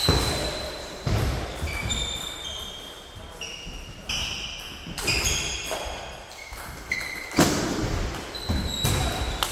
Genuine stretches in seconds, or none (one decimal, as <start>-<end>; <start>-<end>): 0.0-0.5